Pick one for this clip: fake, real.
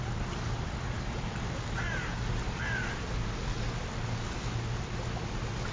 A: real